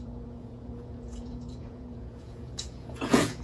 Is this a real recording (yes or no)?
no